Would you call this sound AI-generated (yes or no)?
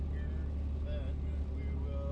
no